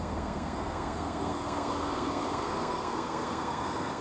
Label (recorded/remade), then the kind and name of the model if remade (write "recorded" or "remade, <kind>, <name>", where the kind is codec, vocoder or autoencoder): remade, codec, SNAC